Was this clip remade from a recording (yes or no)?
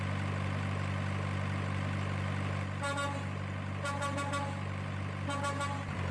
no